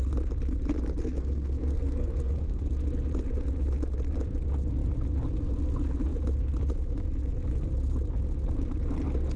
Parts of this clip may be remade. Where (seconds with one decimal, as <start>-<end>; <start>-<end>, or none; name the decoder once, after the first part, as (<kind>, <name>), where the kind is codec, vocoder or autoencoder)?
1.0-2.6 (codec, SNAC)